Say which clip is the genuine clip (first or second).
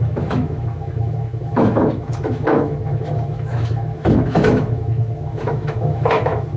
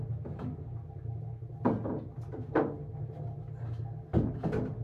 second